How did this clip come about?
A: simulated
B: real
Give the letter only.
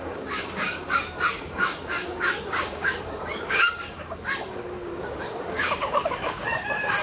A